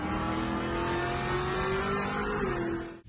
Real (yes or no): yes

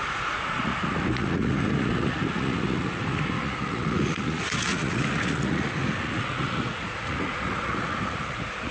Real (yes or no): no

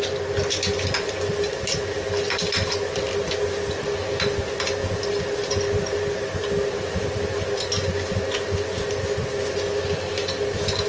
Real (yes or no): yes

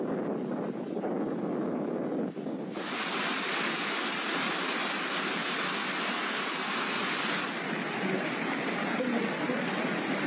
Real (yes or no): yes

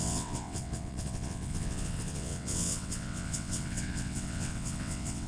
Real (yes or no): no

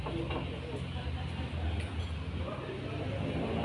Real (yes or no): yes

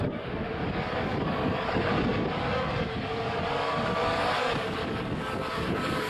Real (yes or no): no